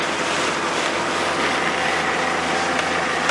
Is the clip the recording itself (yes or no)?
yes